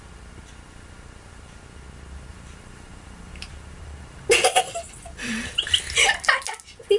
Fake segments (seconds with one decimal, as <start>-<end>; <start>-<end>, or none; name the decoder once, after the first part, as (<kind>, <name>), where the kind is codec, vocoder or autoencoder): 2.3-4.6 (vocoder, BigVGAN v2)